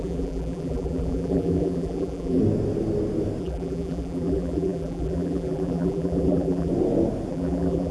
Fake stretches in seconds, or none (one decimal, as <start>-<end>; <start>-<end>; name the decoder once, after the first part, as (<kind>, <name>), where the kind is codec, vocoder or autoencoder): 0.0-2.4 (vocoder, BigVGAN v2); 3.4-6.7; 7.3-7.9